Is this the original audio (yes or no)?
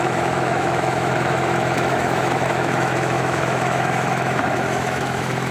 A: no